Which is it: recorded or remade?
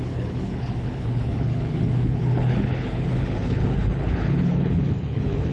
remade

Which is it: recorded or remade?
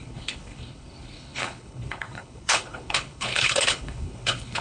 remade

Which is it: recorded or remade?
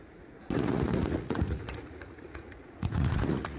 remade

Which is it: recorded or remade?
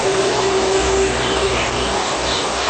remade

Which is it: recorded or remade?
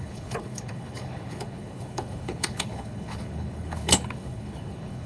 remade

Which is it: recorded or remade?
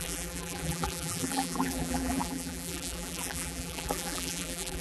remade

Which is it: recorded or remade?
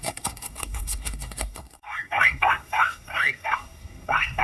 remade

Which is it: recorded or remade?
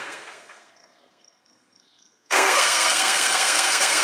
remade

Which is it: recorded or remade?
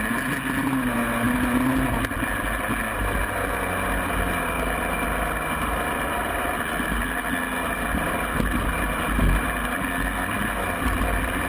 recorded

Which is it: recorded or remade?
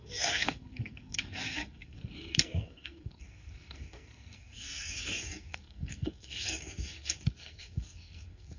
remade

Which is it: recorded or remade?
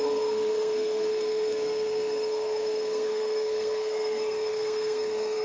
remade